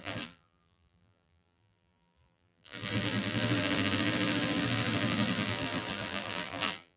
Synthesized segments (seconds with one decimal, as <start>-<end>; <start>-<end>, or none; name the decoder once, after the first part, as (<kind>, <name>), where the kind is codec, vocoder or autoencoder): 0.0-7.0 (vocoder, BigVGAN v2)